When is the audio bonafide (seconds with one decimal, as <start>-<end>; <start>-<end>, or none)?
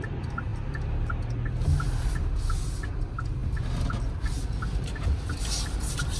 0.0-6.2